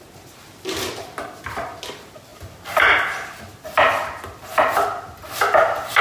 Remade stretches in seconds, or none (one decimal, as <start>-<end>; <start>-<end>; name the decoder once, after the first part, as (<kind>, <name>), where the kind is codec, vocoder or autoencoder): none